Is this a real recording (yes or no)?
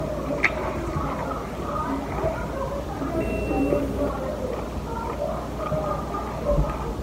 yes